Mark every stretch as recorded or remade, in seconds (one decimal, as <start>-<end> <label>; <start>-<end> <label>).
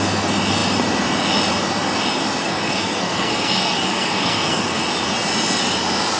0.0-2.4 recorded; 2.4-4.8 remade; 4.8-6.2 recorded